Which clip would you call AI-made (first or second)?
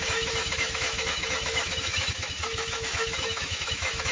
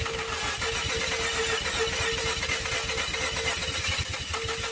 first